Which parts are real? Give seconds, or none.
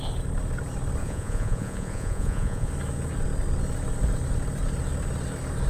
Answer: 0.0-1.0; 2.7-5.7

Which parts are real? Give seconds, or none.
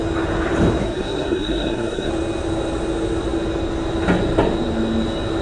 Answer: 0.0-0.8; 2.1-5.4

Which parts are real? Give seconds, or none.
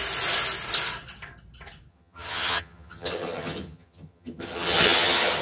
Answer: 0.0-1.9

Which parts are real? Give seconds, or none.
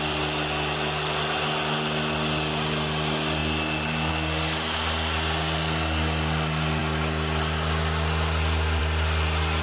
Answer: 0.0-9.6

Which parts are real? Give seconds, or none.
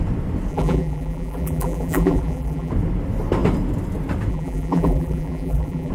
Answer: 0.0-0.5; 2.7-4.3